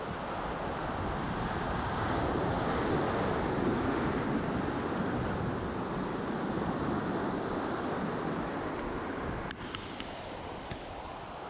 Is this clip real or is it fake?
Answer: real